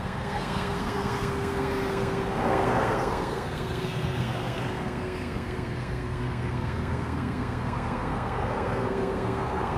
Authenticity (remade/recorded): remade